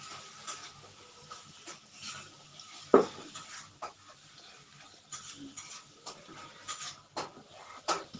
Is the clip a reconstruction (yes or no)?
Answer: no